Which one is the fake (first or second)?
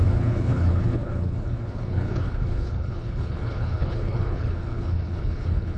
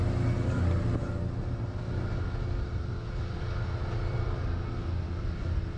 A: first